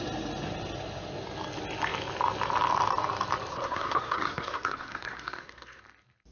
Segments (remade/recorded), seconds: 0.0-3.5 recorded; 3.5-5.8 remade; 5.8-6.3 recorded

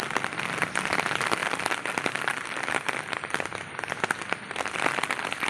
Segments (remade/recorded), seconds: 0.0-5.5 recorded

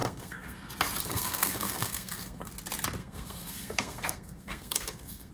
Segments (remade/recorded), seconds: 0.0-0.7 remade; 0.7-1.1 recorded; 1.1-2.5 remade; 2.5-3.0 recorded; 3.0-5.3 remade